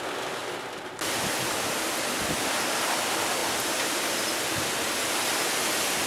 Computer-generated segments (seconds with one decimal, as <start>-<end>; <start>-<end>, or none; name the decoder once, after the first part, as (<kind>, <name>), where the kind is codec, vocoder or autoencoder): 3.4-4.3 (vocoder, BigVGAN v2)